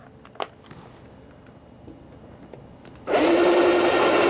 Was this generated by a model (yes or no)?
no